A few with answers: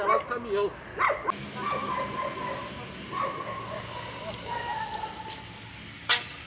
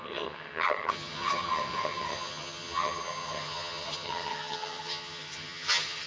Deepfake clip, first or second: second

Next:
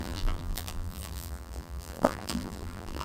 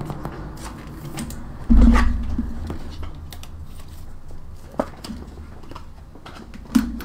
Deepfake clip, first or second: first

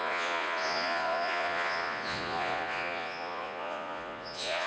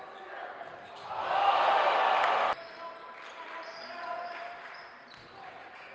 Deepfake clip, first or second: first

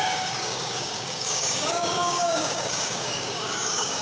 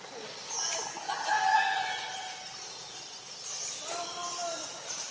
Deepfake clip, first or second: first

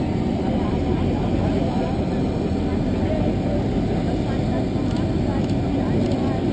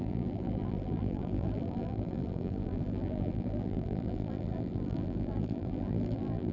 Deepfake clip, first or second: second